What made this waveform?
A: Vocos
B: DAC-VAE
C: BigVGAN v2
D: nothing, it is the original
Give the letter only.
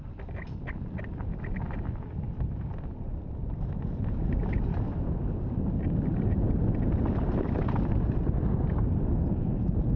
D